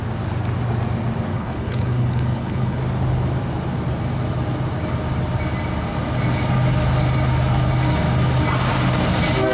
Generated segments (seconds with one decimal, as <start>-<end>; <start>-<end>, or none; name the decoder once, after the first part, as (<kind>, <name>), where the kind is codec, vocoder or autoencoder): 1.3-2.8 (codec, HILCodec)